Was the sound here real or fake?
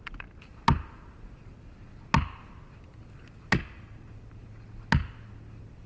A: real